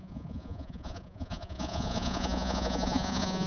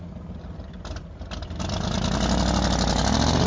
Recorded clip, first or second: second